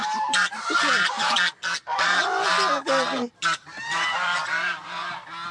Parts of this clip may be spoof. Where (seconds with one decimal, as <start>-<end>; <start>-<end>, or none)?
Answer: 0.0-1.3; 1.9-5.5